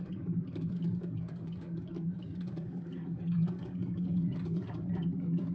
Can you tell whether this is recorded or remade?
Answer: remade